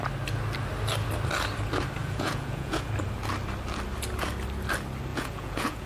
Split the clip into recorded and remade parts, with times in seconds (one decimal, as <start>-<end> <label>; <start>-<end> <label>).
0.0-2.0 recorded; 2.0-2.9 remade; 2.9-5.1 recorded; 5.1-5.9 remade